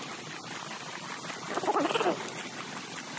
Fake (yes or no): no